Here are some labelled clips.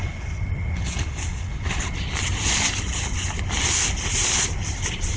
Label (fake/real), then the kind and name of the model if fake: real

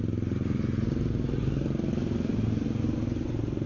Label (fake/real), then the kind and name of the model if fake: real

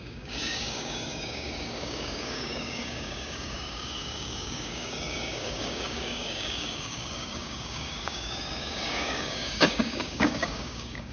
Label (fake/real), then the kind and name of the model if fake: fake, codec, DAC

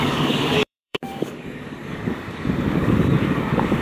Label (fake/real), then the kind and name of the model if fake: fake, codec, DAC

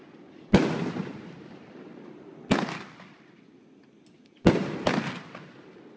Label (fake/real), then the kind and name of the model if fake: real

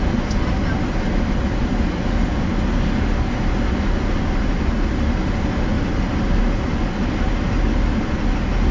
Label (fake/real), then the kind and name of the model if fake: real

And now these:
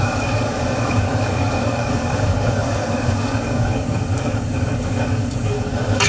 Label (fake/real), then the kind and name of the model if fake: fake, codec, DAC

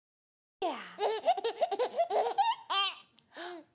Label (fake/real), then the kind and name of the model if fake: real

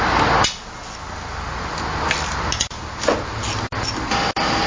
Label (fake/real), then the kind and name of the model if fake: real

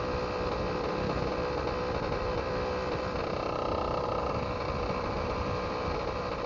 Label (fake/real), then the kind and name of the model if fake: real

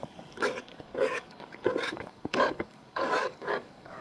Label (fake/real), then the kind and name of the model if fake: fake, codec, DAC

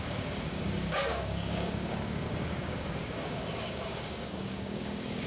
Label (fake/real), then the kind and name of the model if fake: fake, codec, DAC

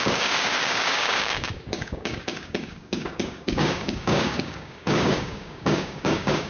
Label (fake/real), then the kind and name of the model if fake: fake, codec, DAC